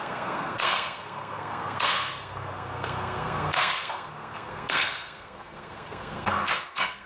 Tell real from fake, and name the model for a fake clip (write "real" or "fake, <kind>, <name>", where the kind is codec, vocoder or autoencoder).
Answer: fake, codec, SNAC